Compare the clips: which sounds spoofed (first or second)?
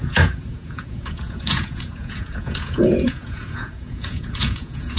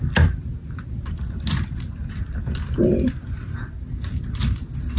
first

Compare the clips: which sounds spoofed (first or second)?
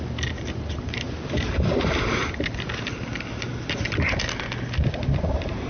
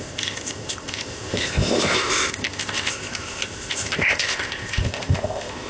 second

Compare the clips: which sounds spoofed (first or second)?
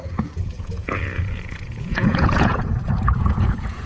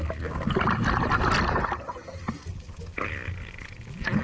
first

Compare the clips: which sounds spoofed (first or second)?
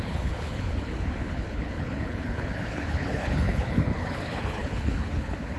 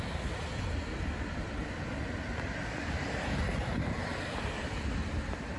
first